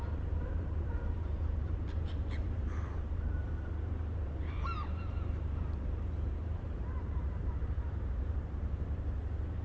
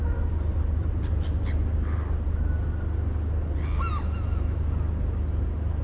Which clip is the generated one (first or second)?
first